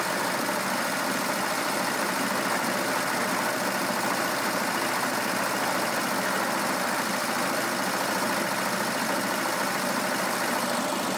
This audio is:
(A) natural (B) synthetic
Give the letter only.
A